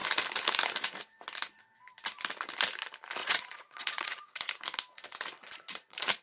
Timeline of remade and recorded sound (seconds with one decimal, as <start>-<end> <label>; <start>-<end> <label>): 0.0-3.2 recorded; 3.2-4.5 remade; 4.5-5.4 recorded; 5.4-6.2 remade